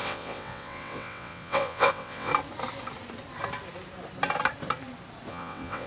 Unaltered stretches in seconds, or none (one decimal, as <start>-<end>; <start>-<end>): 2.3-5.3